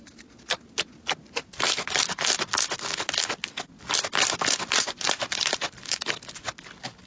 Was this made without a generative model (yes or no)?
yes